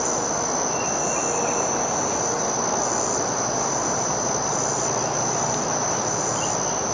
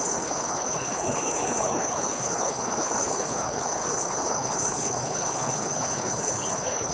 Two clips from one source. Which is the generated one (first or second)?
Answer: second